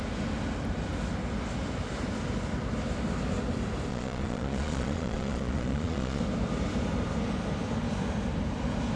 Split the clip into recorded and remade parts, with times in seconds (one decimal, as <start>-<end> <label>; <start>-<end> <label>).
0.0-3.9 recorded; 3.9-6.2 remade; 6.2-9.0 recorded